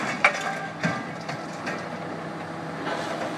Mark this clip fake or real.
real